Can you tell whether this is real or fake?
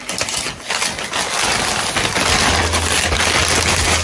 real